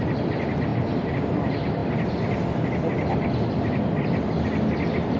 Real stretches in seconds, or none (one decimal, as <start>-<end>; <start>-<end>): 0.0-5.2